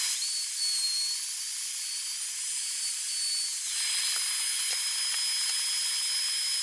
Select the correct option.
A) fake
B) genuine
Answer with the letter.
B